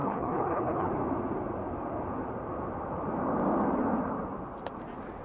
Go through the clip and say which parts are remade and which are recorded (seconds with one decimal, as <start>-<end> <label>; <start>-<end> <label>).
0.0-0.9 remade; 0.9-5.2 recorded